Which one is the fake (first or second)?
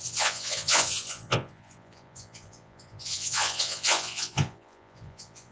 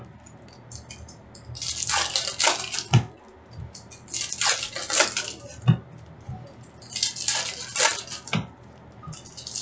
first